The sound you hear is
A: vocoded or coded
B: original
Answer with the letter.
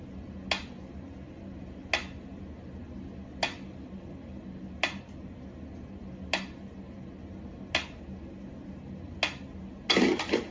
B